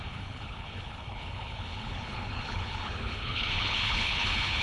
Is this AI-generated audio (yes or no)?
yes